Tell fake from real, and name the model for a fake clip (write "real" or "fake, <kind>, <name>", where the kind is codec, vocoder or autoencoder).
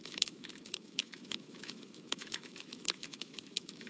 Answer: fake, autoencoder, DAC-VAE